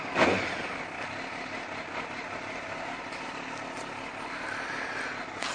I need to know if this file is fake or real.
real